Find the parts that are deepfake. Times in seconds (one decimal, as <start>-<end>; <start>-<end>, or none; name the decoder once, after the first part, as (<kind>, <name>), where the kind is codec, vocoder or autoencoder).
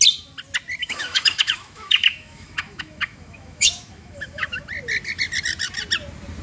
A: 0.8-4.6 (autoencoder, DAC-VAE)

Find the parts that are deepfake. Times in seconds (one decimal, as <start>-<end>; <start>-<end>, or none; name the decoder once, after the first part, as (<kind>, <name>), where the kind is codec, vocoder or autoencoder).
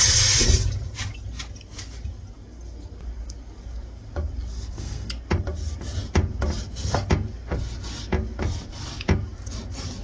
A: 4.5-5.1 (codec, SNAC)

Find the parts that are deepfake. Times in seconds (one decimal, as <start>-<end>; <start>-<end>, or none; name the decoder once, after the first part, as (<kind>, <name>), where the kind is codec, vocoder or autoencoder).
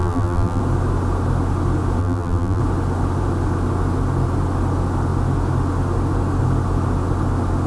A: 0.0-0.6 (vocoder, BigVGAN v2); 2.0-2.6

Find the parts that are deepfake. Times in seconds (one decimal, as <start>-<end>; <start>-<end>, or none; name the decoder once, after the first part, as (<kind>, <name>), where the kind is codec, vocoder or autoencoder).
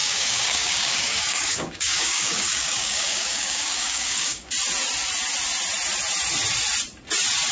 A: 0.0-4.5 (codec, DAC)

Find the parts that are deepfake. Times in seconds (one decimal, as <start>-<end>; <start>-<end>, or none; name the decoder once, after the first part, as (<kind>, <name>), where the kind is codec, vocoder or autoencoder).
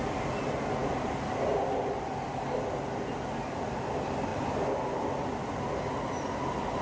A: none